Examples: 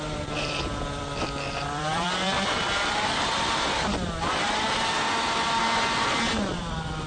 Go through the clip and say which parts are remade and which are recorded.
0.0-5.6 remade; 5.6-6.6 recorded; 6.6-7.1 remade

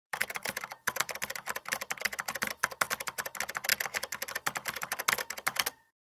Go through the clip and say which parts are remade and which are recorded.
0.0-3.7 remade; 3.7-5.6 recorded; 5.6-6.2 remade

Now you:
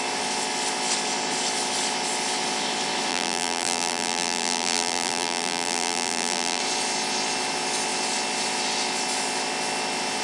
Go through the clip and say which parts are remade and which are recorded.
0.0-3.1 recorded; 3.1-6.6 remade; 6.6-10.2 recorded

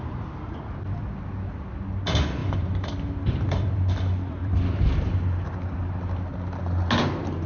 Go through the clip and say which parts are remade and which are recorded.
0.0-2.4 recorded; 2.4-4.9 remade; 4.9-7.5 recorded